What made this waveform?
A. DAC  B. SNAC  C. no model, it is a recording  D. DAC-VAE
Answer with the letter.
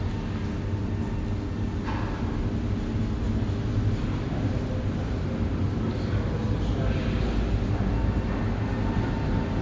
C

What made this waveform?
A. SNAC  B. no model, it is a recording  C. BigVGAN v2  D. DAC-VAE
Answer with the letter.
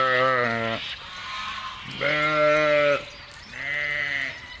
B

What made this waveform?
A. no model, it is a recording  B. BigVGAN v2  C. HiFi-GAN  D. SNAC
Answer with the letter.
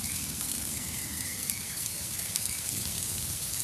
D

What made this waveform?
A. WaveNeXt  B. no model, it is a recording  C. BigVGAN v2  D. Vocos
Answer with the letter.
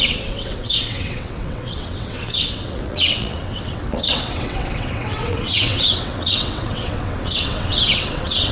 A